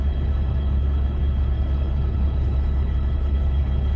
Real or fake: fake